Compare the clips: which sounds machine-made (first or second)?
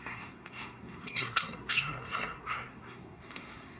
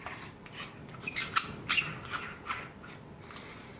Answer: first